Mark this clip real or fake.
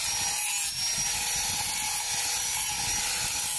real